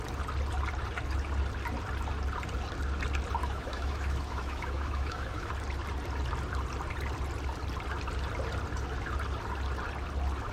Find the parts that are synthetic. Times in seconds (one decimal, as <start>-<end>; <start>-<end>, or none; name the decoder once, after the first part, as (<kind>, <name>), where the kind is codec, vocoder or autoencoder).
3.4-5.5 (autoencoder, DAC-VAE)